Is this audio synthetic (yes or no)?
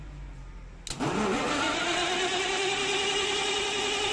no